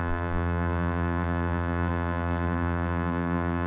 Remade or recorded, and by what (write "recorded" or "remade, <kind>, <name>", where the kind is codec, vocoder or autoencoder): remade, vocoder, BigVGAN v2